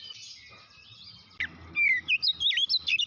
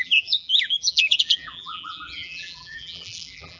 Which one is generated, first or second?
second